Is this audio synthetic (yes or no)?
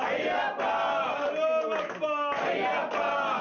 no